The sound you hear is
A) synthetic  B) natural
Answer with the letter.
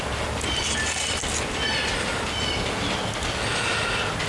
B